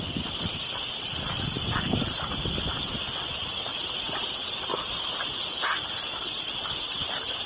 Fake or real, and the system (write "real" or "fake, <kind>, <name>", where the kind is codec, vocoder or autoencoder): real